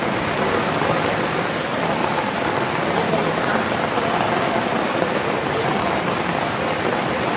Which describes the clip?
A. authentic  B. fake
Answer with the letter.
A